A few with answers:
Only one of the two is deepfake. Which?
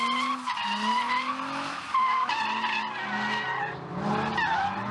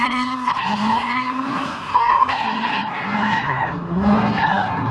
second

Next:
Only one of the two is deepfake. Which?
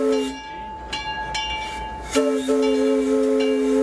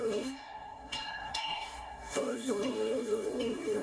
second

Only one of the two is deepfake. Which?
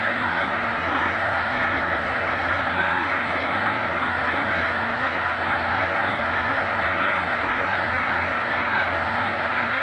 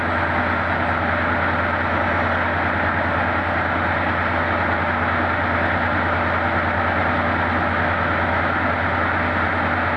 first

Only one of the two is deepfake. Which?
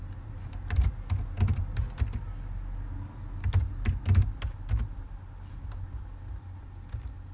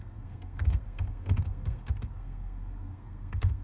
second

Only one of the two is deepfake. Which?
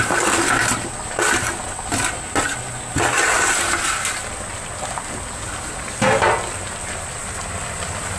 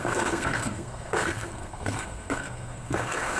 second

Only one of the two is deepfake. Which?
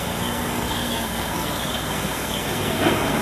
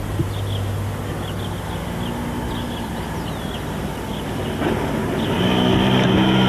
first